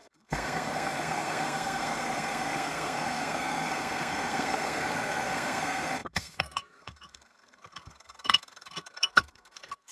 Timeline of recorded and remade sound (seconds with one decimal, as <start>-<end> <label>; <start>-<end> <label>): 0.0-9.9 remade